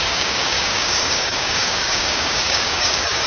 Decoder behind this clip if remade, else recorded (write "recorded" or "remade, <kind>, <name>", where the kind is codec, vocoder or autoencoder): remade, codec, DAC